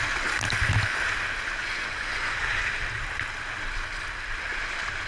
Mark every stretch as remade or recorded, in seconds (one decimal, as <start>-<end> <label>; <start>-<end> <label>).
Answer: 0.0-1.6 recorded; 1.6-2.4 remade; 2.4-5.1 recorded

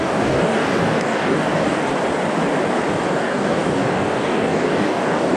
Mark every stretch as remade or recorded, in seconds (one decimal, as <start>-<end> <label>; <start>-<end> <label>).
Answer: 0.0-1.9 remade; 1.9-3.1 recorded; 3.1-5.4 remade

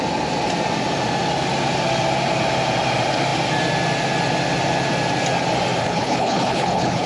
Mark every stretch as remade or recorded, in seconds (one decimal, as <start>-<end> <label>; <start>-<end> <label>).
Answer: 0.0-5.8 recorded; 5.8-7.1 remade

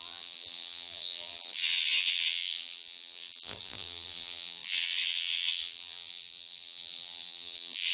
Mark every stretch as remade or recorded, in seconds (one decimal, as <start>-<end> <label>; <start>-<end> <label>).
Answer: 0.0-7.9 remade